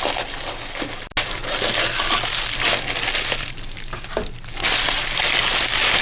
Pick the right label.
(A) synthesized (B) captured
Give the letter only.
B